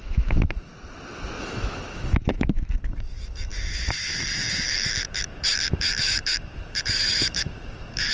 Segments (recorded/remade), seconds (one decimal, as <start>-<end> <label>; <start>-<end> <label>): 0.0-0.7 remade; 0.7-1.4 recorded; 1.4-8.1 remade

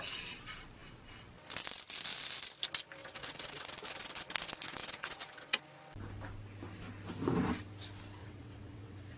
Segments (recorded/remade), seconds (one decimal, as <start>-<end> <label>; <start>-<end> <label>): 0.0-3.0 recorded; 3.0-3.7 remade; 3.7-4.8 recorded; 4.8-5.6 remade; 5.6-8.2 recorded; 8.2-9.2 remade

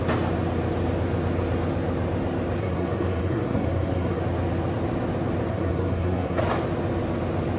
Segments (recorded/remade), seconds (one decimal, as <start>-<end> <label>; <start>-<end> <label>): 0.0-2.6 recorded; 2.6-4.2 remade; 4.2-5.5 recorded; 5.5-6.4 remade; 6.4-7.6 recorded

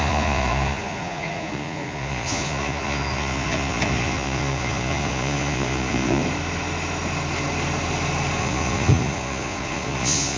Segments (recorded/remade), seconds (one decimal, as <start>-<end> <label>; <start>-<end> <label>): 0.0-6.2 remade; 6.2-8.4 recorded; 8.4-10.4 remade

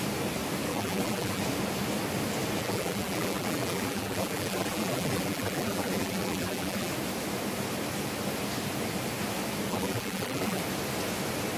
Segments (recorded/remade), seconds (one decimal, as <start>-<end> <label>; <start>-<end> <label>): 0.0-0.7 recorded; 0.7-1.4 remade; 1.4-2.6 recorded; 2.6-6.9 remade; 6.9-9.7 recorded; 9.7-10.6 remade; 10.6-11.6 recorded

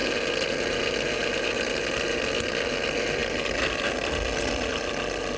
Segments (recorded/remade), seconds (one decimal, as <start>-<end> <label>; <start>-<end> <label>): 0.0-5.4 recorded

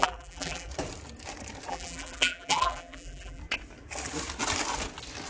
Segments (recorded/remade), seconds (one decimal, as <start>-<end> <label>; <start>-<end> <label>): 0.0-0.7 remade; 0.7-1.7 recorded; 1.7-3.4 remade; 3.4-5.3 recorded